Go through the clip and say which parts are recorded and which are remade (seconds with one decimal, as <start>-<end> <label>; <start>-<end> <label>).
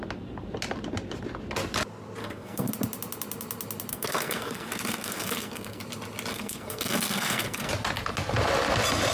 0.0-2.2 recorded; 2.2-2.7 remade; 2.7-3.9 recorded; 3.9-5.8 remade; 5.8-6.3 recorded; 6.3-7.7 remade; 7.7-9.1 recorded